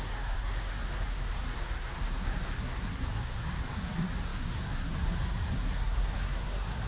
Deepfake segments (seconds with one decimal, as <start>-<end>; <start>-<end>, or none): 0.0-6.9